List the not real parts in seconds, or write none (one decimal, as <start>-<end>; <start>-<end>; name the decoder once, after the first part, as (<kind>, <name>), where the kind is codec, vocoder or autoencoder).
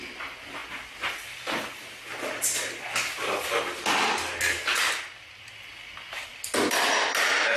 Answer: none